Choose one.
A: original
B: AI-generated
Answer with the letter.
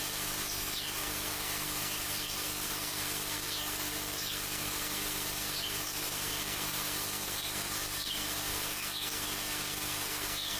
B